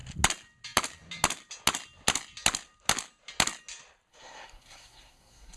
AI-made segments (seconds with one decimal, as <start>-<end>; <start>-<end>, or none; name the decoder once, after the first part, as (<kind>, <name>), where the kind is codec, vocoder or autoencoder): 4.1-5.6 (codec, SNAC)